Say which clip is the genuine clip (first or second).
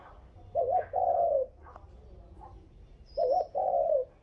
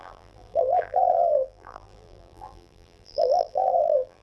first